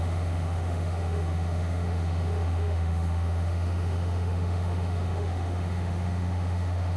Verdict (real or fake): fake